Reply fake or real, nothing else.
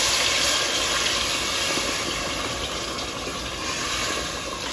real